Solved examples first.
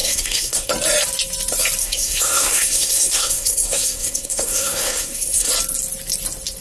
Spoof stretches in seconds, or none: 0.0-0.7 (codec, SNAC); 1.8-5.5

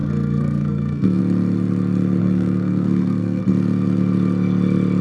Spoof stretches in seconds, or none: 0.0-1.2 (codec, SNAC); 2.2-3.4

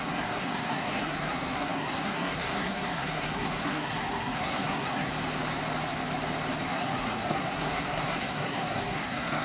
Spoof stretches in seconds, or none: 0.0-5.1 (codec, SNAC); 6.7-9.4

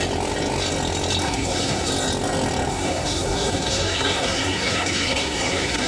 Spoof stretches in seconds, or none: 1.2-1.9 (codec, SNAC); 2.7-5.9

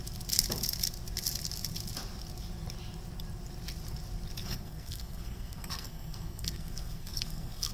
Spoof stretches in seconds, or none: 4.4-7.7 (codec, SNAC)

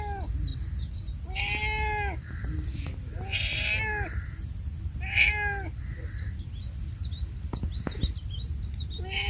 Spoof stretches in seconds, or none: none